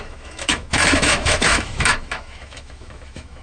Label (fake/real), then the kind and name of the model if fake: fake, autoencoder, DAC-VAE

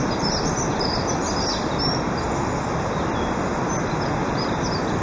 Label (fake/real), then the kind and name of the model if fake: real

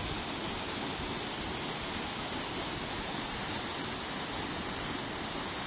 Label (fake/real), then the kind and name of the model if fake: real